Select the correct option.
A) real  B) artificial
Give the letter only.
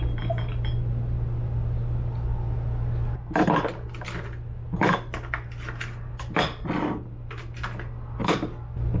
A